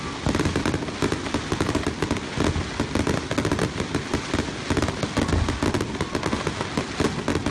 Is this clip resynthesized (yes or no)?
no